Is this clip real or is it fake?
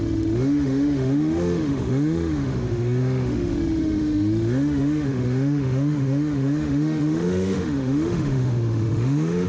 fake